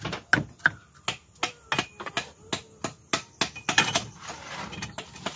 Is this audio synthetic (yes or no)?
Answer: no